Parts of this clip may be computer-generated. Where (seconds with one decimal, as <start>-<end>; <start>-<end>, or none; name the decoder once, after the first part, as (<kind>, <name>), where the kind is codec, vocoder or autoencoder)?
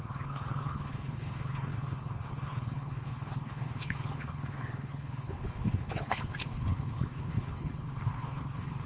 0.0-8.9 (codec, HILCodec)